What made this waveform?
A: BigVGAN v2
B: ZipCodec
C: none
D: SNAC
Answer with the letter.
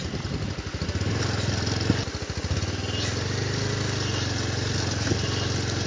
C